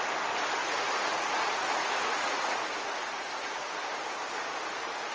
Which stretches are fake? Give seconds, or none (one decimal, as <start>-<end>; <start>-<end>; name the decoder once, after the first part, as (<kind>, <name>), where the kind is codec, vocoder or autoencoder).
0.6-3.7 (vocoder, Vocos)